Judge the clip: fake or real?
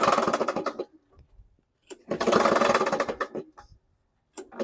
real